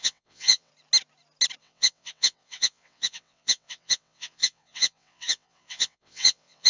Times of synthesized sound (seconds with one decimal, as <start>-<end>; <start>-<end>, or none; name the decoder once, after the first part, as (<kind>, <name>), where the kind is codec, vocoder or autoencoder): 0.0-0.7 (vocoder, WaveNeXt); 1.6-6.7